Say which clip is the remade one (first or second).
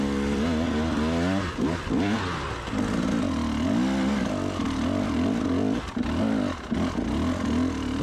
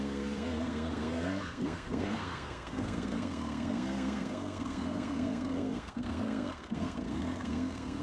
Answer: second